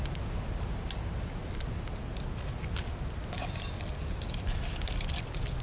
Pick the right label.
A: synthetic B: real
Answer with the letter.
B